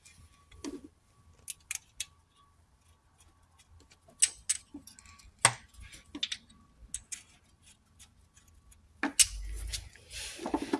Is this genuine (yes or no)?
yes